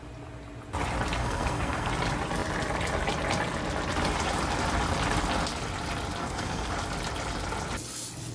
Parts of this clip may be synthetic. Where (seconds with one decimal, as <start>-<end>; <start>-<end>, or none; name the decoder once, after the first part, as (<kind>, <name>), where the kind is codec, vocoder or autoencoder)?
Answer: 1.2-1.9 (codec, SNAC); 6.2-6.7